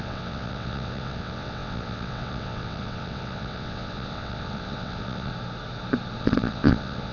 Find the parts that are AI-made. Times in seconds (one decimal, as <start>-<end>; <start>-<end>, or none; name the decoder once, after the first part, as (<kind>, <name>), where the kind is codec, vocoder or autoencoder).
0.0-5.3 (vocoder, WaveNeXt); 6.2-7.1

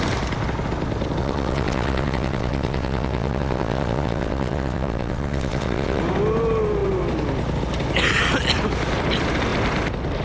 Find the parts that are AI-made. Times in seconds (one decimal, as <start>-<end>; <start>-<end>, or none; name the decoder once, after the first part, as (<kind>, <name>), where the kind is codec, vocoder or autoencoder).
1.2-6.0 (vocoder, WaveNeXt)

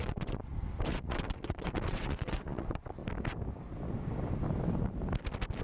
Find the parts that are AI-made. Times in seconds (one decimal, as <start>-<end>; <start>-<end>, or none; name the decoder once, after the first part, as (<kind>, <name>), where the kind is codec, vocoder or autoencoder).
0.0-0.4 (vocoder, WaveNeXt); 0.9-3.0

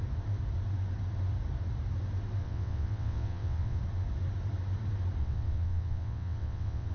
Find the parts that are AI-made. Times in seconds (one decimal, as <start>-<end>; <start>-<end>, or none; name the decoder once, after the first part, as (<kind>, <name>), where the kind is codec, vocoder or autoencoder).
2.4-3.8 (vocoder, WaveNeXt); 5.2-6.9

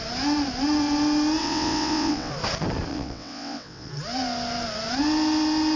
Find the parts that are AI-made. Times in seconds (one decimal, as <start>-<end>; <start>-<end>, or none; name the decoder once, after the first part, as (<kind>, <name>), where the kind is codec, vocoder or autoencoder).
1.4-2.3 (vocoder, WaveNeXt); 2.9-3.9

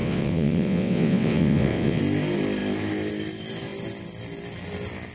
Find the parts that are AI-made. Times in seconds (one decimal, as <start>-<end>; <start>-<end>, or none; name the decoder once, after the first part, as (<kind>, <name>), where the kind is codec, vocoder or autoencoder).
0.0-2.0 (vocoder, WaveNeXt)

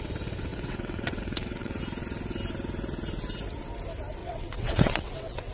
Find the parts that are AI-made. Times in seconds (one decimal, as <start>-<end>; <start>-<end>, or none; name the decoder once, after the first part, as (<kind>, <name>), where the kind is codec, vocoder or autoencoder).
0.5-1.8 (vocoder, WaveNeXt); 4.2-5.5